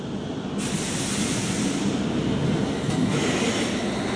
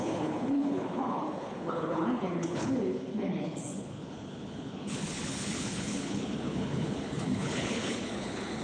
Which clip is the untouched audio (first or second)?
first